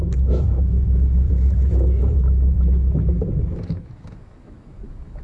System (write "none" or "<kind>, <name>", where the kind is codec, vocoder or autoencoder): autoencoder, DAC-VAE